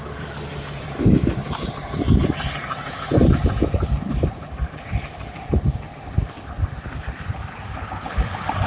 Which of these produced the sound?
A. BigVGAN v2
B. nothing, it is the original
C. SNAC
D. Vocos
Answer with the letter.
A